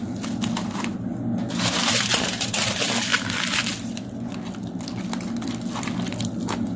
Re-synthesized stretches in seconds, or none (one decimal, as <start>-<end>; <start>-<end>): none